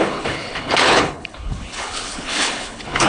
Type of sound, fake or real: fake